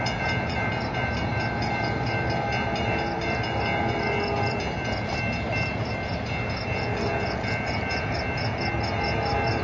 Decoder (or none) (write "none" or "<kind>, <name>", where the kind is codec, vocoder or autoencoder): none